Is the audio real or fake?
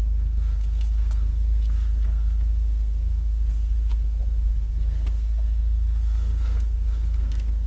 fake